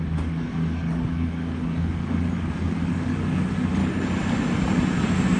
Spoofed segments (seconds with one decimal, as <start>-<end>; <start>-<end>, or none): 0.0-3.8

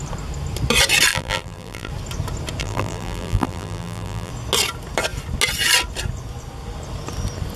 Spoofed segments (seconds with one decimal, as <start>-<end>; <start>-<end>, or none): 1.1-1.9; 2.6-4.3

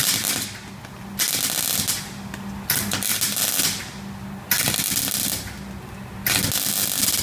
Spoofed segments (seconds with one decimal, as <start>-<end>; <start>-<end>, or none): none

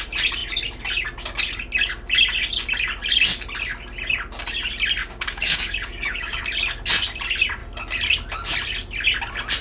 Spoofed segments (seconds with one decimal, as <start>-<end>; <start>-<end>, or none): 5.0-6.4

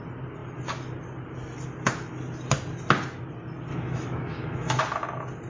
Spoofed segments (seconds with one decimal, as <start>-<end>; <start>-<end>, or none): 3.7-4.8

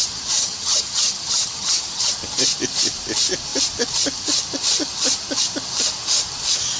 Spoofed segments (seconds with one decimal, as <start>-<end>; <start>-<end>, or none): 0.4-2.1

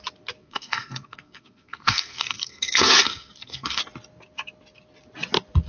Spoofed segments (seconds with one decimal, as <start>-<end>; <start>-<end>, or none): 0.4-3.8